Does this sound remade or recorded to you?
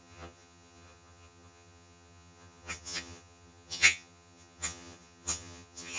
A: remade